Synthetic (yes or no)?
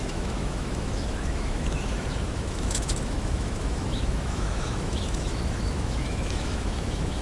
yes